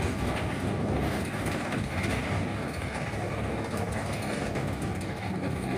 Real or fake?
fake